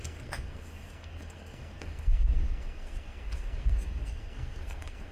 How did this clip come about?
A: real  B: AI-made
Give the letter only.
B